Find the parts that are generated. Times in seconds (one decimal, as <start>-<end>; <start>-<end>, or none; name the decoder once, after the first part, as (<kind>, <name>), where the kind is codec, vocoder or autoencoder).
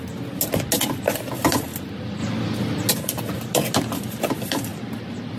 none